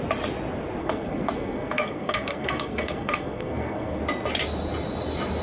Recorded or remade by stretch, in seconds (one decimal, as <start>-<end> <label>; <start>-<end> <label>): 0.0-0.8 recorded; 0.8-4.0 remade; 4.0-5.4 recorded